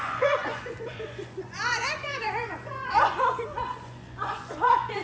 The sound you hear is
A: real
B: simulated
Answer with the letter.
B